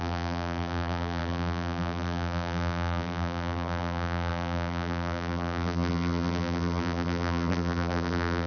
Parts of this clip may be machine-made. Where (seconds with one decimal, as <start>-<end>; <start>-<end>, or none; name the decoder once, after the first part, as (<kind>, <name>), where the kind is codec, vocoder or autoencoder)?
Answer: 0.0-8.5 (vocoder, BigVGAN v2)